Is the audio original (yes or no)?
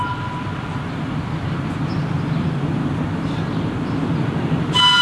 yes